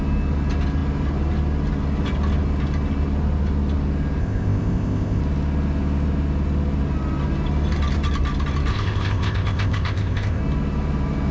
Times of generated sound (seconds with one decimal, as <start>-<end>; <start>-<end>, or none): 4.2-5.2; 8.7-10.4